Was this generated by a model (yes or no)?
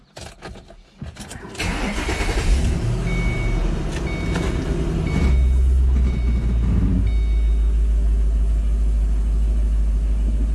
no